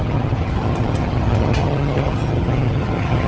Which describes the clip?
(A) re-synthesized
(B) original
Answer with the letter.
A